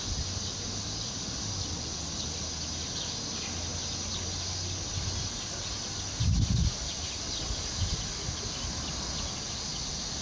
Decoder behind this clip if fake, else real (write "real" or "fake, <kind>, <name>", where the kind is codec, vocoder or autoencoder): real